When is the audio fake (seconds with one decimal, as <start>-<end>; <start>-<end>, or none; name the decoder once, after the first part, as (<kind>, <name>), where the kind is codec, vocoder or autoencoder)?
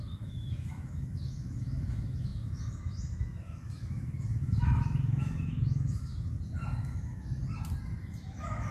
0.0-6.1 (autoencoder, DAC-VAE); 6.8-7.4; 8.0-8.7